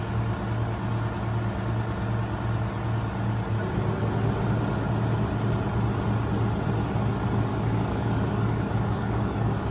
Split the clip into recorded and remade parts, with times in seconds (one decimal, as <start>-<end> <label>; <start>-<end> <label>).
0.0-7.5 recorded; 7.5-9.7 remade